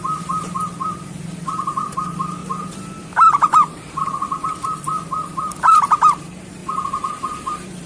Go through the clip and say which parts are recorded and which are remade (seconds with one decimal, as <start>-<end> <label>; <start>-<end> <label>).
0.0-2.4 remade; 2.4-3.3 recorded; 3.3-6.6 remade; 6.6-7.5 recorded; 7.5-7.9 remade